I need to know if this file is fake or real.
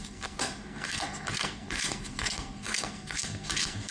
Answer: fake